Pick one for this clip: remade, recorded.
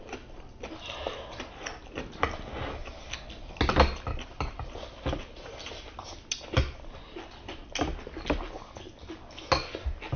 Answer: recorded